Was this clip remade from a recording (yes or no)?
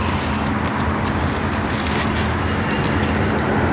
no